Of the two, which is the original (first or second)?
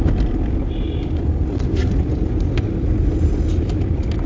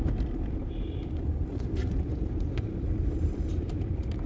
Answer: first